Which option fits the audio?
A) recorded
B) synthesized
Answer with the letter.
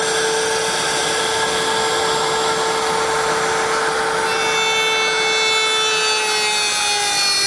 A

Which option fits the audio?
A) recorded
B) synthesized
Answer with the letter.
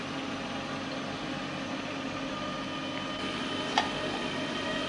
A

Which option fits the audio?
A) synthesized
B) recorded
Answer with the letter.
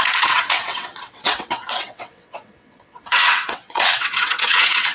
A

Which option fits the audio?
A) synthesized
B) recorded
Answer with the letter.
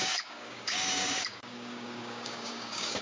A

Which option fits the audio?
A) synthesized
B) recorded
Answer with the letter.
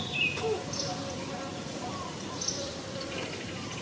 B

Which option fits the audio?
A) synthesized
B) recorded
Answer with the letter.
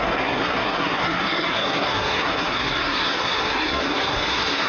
A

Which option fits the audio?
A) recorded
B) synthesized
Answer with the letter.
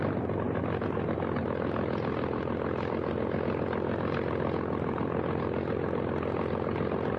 B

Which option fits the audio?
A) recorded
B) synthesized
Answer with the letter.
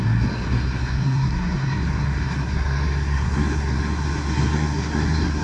B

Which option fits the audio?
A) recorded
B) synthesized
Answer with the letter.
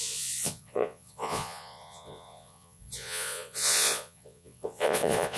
B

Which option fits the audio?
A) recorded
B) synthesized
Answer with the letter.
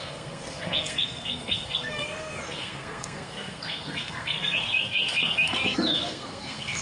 B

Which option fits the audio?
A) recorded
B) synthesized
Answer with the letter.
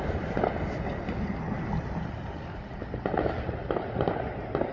A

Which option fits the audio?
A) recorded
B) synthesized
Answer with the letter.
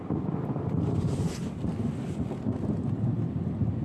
A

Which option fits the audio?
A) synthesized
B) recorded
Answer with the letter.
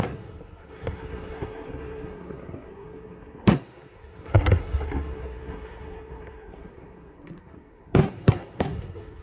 A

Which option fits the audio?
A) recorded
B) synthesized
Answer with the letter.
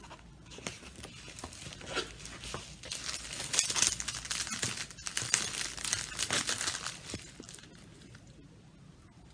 A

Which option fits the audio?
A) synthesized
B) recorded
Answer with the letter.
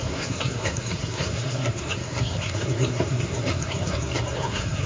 A